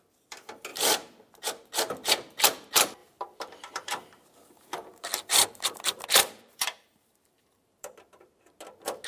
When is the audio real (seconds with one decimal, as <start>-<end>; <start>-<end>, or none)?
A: 0.0-0.7; 1.3-3.0; 8.3-9.1